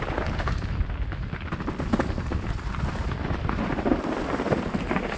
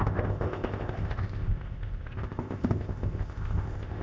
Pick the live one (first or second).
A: first